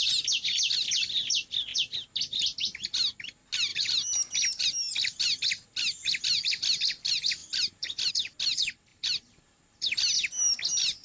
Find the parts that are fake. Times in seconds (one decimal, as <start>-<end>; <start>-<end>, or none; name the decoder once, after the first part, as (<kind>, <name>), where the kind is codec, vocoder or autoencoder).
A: none